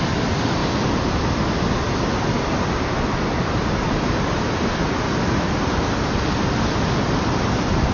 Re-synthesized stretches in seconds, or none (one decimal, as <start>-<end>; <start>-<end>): none